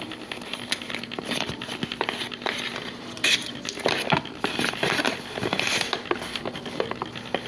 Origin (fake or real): real